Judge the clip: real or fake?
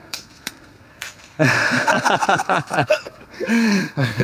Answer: fake